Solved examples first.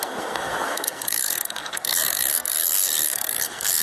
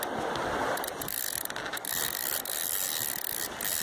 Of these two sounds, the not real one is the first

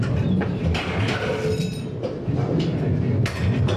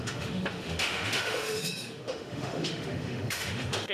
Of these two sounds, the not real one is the second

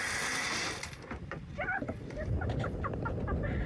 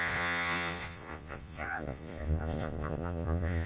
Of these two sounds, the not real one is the second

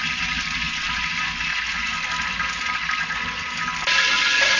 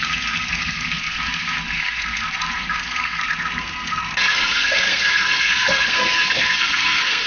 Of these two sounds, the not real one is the second